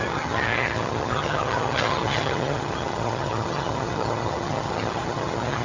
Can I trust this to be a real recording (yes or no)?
no